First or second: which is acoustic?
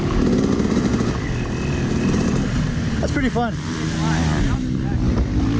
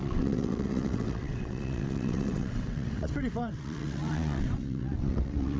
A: first